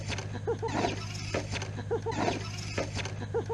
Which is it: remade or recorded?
recorded